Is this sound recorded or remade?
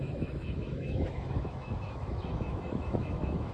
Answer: remade